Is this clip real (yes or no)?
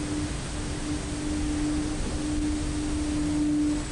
yes